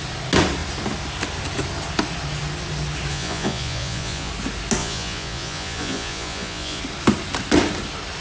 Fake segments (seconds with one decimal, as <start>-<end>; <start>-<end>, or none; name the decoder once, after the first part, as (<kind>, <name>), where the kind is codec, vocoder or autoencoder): 3.1-4.3 (vocoder, Vocos); 4.8-6.8

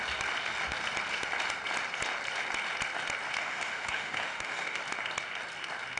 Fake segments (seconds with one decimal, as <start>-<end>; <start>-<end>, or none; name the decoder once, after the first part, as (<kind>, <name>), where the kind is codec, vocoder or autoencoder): 3.4-4.8 (autoencoder, DAC-VAE)